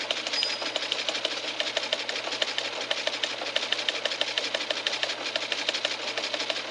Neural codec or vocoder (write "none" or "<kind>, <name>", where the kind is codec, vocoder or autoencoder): none